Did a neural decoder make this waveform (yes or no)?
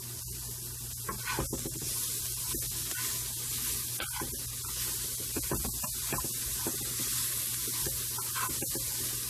no